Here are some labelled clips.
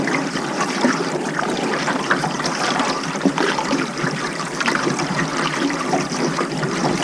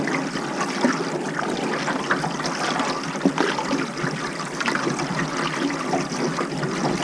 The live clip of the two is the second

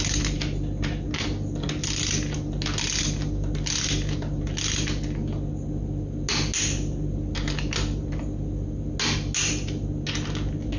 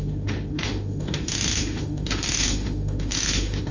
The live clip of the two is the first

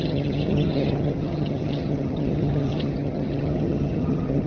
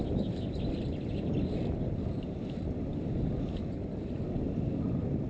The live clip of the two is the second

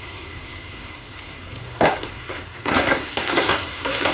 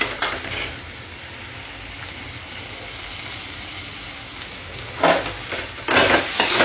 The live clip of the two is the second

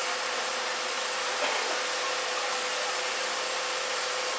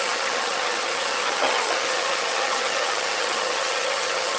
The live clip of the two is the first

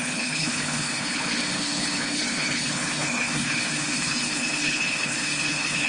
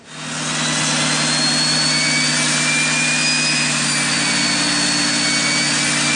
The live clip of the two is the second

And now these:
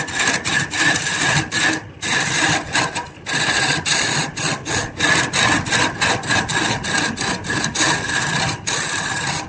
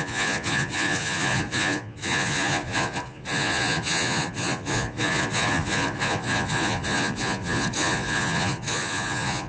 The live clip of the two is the first